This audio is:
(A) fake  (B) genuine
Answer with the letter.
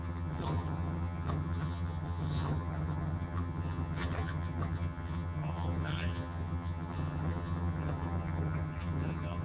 A